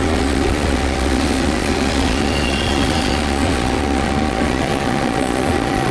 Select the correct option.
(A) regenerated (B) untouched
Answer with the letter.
A